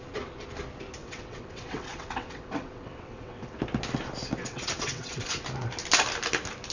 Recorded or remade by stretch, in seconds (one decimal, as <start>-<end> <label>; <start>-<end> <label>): 0.0-1.0 recorded; 1.0-3.6 remade; 3.6-4.4 recorded; 4.4-5.4 remade; 5.4-6.7 recorded